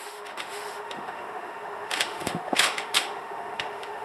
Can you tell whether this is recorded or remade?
remade